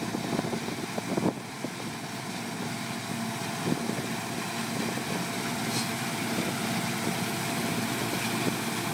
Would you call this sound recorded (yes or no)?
yes